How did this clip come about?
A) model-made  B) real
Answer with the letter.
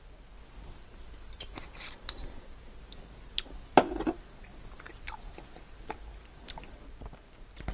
B